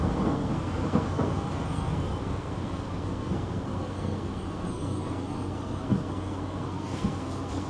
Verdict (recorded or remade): remade